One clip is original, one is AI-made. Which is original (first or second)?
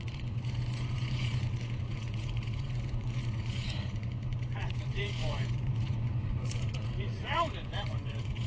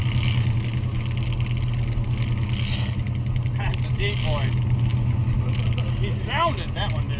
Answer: second